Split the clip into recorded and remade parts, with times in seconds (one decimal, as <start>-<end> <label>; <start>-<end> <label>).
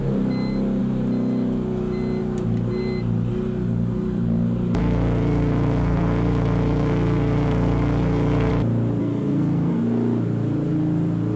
0.0-4.8 recorded; 4.8-8.5 remade; 8.5-9.0 recorded; 9.0-9.8 remade; 9.8-11.4 recorded